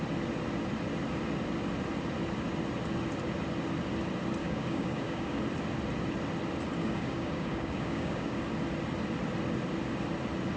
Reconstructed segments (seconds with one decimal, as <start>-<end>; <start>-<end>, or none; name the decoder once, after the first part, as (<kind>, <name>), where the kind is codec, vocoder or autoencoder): 4.4-5.4 (codec, DAC); 6.8-8.4